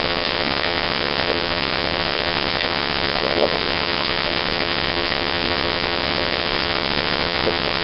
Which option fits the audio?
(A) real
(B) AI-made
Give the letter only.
B